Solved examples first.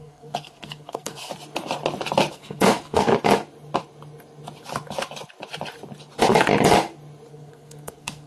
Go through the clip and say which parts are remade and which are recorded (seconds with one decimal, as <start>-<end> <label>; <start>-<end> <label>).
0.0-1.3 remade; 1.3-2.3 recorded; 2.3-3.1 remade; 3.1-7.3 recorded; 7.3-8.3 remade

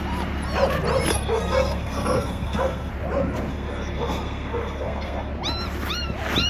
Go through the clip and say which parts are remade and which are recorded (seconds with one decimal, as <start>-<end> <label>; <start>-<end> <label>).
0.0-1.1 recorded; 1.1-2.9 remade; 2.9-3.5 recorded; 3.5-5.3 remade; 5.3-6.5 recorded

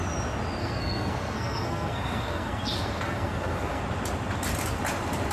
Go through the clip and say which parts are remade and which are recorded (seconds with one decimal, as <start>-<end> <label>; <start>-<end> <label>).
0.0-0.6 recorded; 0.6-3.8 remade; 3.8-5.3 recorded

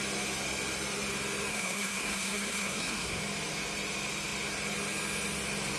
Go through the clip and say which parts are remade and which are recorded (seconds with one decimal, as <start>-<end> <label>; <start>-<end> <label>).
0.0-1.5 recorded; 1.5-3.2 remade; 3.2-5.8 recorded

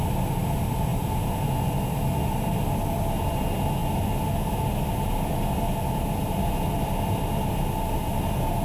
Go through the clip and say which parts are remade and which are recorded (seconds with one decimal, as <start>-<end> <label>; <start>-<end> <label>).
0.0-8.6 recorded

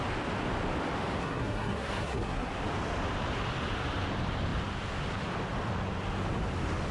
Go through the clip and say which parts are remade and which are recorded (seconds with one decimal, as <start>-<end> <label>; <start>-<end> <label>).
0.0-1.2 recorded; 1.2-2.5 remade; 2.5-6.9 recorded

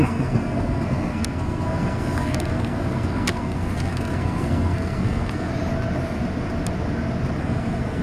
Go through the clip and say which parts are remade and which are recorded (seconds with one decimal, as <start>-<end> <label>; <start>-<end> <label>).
0.0-5.5 remade; 5.5-7.4 recorded; 7.4-8.0 remade